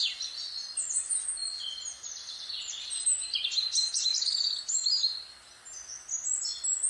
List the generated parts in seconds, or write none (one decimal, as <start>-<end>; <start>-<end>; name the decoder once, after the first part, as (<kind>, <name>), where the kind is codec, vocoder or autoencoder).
none